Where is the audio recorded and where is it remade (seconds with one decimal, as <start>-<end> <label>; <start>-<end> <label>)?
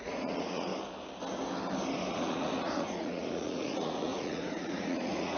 0.0-0.7 remade; 0.7-2.1 recorded; 2.1-5.4 remade